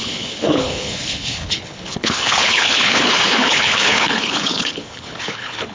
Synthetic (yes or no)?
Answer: yes